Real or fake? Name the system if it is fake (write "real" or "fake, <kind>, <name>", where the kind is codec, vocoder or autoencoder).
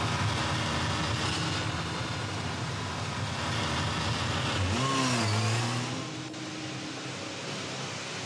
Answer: real